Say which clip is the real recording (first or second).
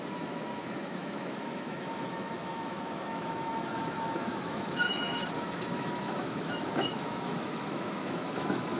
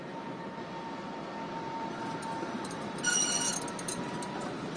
second